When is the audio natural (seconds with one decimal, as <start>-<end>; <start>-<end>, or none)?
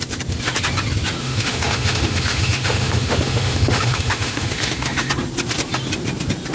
0.0-1.2; 5.1-6.5